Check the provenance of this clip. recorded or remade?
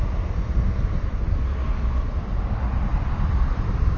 recorded